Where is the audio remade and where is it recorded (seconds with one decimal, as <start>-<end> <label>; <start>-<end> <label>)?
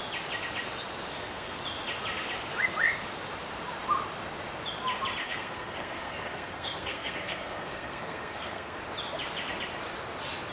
0.0-1.1 recorded; 1.1-1.6 remade; 1.6-5.2 recorded; 5.2-8.8 remade; 8.8-10.5 recorded